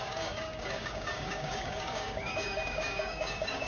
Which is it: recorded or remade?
remade